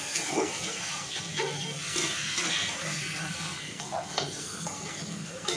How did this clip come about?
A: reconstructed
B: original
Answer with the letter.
A